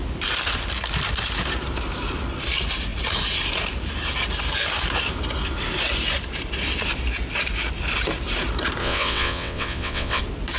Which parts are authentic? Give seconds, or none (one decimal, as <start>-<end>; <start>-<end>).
0.0-8.8; 10.2-10.6